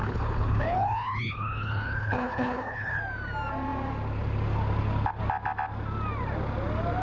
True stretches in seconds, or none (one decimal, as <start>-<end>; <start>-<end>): 3.0-7.0

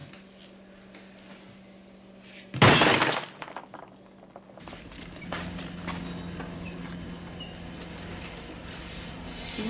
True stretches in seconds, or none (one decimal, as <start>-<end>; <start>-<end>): 0.0-9.7

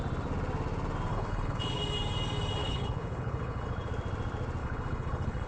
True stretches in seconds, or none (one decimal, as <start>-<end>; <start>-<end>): 0.0-1.1; 1.8-2.6; 3.9-4.6

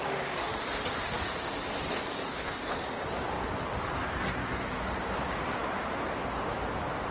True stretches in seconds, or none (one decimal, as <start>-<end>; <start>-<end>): 0.0-2.3; 2.8-7.1

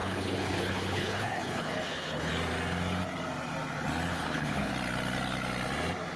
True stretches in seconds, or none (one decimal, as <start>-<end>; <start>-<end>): 2.3-4.1; 4.7-6.2

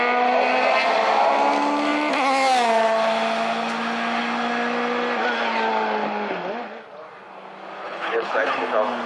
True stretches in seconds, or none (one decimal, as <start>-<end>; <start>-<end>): 0.0-7.8; 8.5-9.1

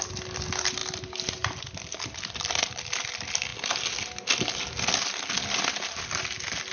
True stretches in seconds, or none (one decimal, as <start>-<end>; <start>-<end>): 0.0-6.7

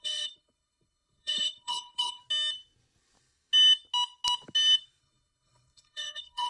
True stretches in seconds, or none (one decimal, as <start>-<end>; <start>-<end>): 2.2-5.0